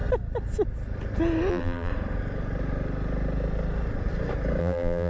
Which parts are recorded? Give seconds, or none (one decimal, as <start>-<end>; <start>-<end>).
0.0-1.5; 1.9-4.6